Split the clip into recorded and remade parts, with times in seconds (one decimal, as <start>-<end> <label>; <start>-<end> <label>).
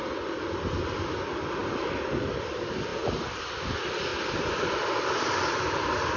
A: 0.0-6.2 recorded